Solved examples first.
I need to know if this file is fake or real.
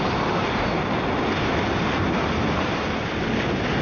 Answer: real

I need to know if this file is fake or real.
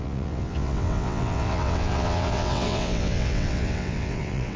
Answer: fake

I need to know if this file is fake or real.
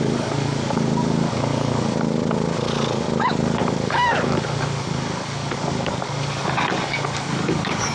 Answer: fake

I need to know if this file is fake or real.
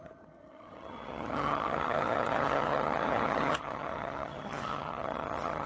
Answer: fake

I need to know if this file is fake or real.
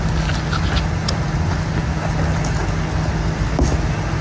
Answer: real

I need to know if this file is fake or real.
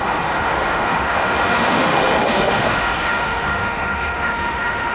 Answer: fake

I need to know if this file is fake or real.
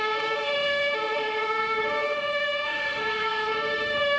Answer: fake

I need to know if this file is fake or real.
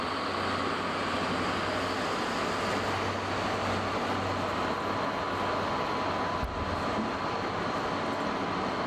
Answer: real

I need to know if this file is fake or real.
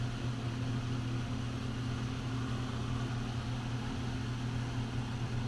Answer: real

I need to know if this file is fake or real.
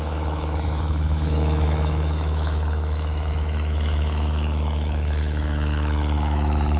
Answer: fake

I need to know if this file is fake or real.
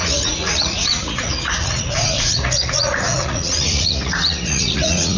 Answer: fake